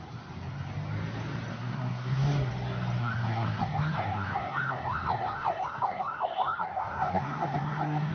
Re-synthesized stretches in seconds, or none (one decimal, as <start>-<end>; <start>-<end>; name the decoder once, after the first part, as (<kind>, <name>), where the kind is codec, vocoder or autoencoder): 1.5-2.5 (codec, SNAC); 3.0-8.1